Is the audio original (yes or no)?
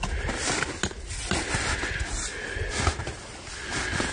yes